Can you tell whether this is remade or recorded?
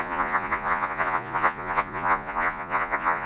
remade